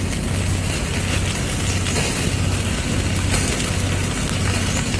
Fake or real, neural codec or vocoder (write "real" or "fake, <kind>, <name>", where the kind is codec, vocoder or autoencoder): real